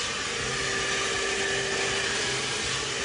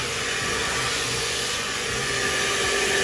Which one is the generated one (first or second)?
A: second